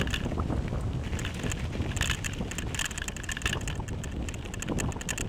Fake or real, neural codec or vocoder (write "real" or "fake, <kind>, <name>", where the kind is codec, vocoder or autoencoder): real